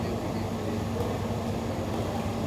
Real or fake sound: real